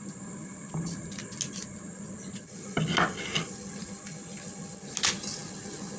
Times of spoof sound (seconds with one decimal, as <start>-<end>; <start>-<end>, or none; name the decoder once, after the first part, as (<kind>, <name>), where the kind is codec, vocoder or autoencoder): none